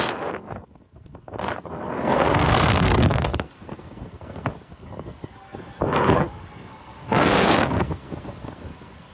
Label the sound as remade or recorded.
remade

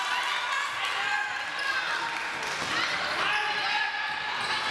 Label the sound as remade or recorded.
recorded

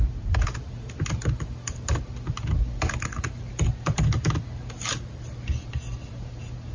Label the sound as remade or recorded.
recorded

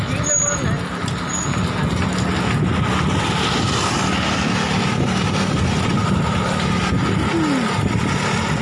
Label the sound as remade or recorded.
recorded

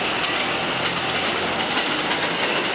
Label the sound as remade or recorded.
recorded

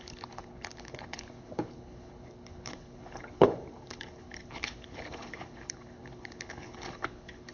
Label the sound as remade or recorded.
remade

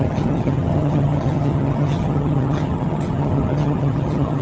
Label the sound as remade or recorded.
remade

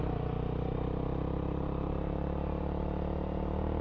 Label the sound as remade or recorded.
recorded